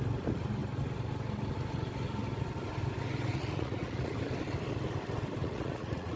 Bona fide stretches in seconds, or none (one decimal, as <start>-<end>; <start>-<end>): 0.0-3.3; 4.1-5.4

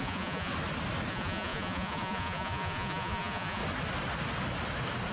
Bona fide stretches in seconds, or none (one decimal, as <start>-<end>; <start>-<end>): 0.5-1.1; 3.6-5.1

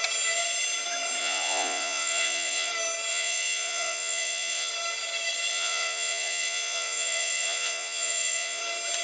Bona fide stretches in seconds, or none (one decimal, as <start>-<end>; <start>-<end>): 0.0-1.2; 2.7-3.1; 4.7-5.5; 8.6-9.0

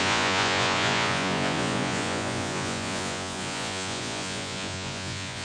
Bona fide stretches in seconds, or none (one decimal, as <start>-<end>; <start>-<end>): none

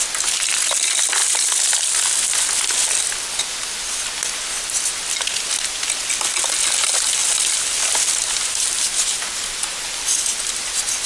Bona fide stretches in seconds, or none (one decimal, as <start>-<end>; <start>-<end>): 0.0-11.1

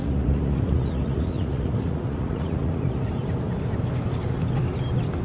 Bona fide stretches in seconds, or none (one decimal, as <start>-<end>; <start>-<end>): 3.1-5.2

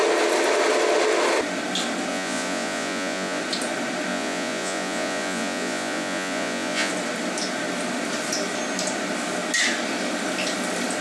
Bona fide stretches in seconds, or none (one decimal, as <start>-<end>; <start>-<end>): 0.0-2.1; 3.4-4.1; 6.9-11.0

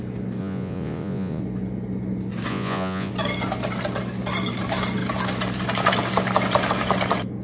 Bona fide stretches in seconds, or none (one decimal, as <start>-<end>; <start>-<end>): 0.0-0.4; 1.4-2.5; 3.1-7.4